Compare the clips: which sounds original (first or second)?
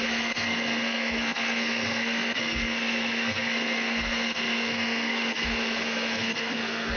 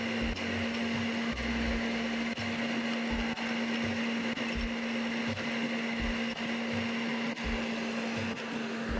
second